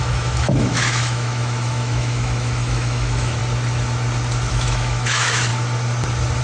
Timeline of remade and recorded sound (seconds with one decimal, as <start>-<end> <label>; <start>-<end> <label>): 0.0-3.4 remade; 3.4-4.5 recorded; 4.5-5.5 remade; 5.5-6.4 recorded